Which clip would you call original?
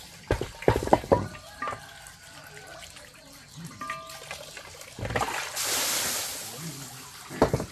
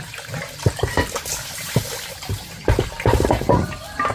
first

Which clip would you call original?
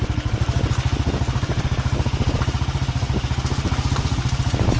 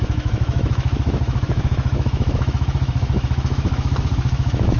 first